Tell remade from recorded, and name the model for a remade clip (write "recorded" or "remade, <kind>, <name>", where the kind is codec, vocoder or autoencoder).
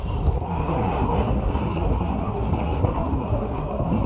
remade, codec, SNAC